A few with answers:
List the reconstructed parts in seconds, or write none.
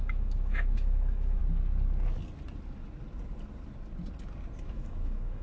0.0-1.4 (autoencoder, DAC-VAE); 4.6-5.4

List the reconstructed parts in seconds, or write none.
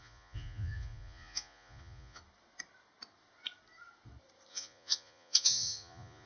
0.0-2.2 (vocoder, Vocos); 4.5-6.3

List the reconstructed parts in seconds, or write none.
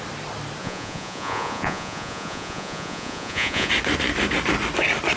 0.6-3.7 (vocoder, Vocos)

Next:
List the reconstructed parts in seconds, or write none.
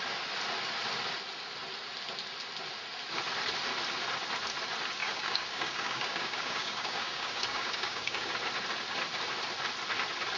5.0-8.3 (codec, DAC)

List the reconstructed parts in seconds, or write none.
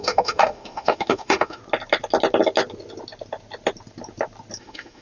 0.0-1.6 (autoencoder, DAC-VAE); 4.6-5.0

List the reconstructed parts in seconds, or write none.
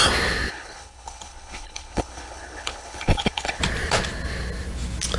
0.5-3.6 (codec, HILCodec)